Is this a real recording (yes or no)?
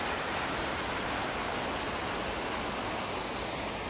yes